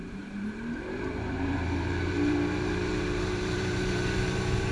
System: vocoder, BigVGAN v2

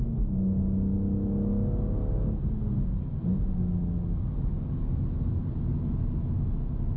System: none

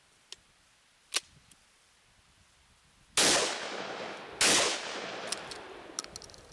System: none